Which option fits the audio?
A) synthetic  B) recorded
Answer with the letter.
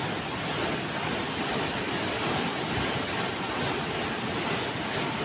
B